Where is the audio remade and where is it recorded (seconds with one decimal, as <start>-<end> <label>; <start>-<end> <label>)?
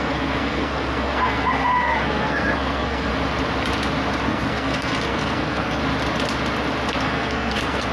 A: 0.0-3.1 remade; 3.1-4.2 recorded; 4.2-5.8 remade; 5.8-7.0 recorded; 7.0-7.9 remade